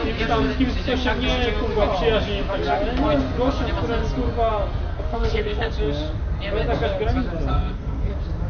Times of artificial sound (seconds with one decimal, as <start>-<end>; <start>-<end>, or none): 4.9-5.7; 7.5-8.1